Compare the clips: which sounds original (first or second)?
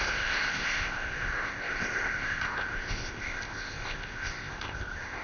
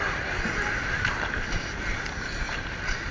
second